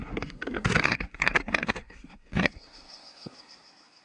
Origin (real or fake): fake